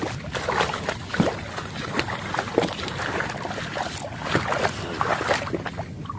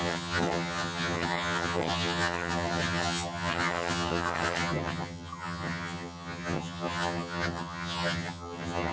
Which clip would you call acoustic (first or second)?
first